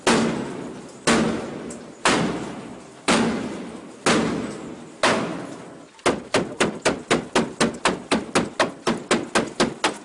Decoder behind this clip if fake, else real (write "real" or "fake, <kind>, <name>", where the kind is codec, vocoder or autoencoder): real